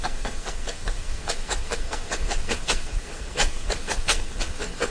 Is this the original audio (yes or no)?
no